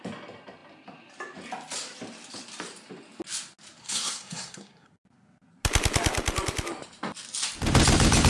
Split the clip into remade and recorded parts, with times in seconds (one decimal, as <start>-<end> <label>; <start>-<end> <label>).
0.0-3.8 recorded; 3.8-4.9 remade; 4.9-8.3 recorded